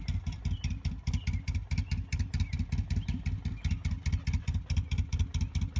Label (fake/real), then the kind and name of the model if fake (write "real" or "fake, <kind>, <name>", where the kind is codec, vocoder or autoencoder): real